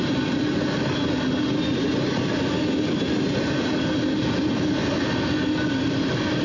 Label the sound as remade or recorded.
recorded